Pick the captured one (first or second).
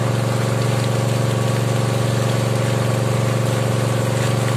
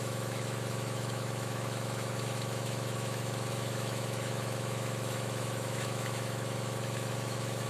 first